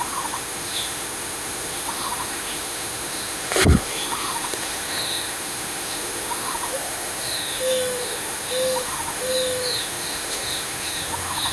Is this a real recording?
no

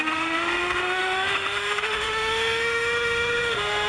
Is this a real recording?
no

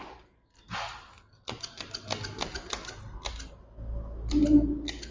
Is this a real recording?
yes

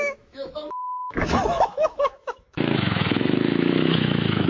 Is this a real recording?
no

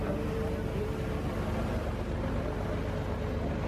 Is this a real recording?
yes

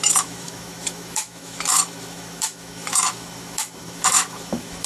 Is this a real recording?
no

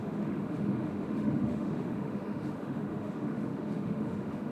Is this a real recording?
no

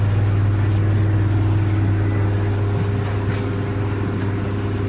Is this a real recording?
yes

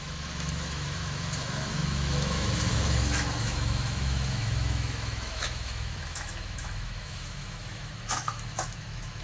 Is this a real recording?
no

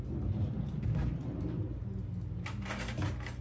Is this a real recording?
yes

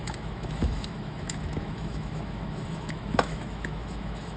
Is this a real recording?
no